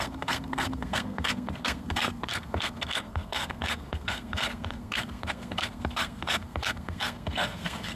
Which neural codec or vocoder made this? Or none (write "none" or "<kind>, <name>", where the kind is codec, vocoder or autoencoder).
codec, SNAC